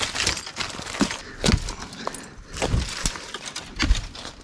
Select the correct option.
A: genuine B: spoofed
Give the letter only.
A